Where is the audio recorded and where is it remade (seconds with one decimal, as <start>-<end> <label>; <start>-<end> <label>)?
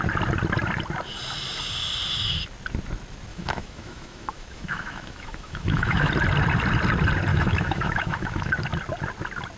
0.0-3.3 recorded; 3.3-6.1 remade; 6.1-7.3 recorded; 7.3-8.5 remade; 8.5-9.6 recorded